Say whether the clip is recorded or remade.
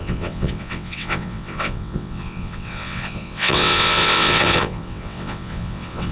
remade